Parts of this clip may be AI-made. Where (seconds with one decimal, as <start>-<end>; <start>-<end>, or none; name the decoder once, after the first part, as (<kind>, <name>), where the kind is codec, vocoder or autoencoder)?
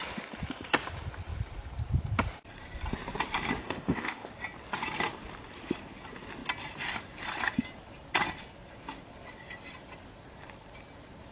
3.6-4.3 (codec, ZipCodec)